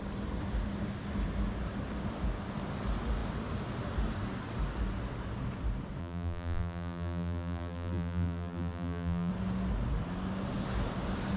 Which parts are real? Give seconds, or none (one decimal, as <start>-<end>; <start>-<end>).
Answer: 0.0-6.0; 9.3-11.4